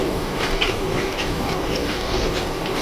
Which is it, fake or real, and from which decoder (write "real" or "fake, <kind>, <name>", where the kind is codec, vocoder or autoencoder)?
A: fake, codec, DAC